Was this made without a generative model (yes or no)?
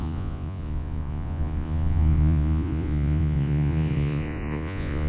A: no